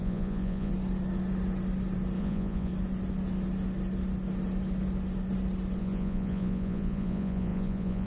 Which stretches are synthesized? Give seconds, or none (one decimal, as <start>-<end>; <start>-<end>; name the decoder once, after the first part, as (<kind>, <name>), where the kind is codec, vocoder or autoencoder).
0.0-0.7 (vocoder, Vocos); 2.2-2.7; 5.8-8.1